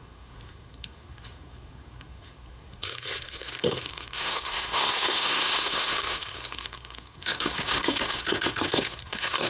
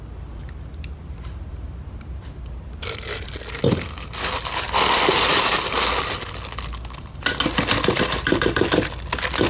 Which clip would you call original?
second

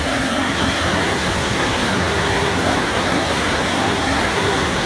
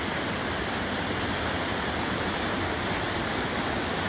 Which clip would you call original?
second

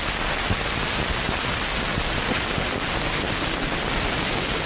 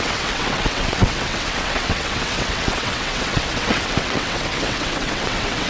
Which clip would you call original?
first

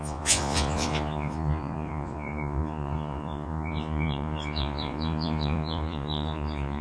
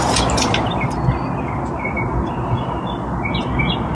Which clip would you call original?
second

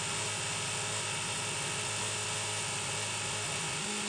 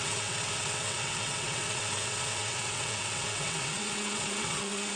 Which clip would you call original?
first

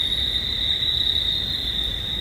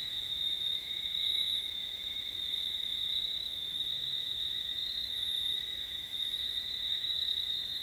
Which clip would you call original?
first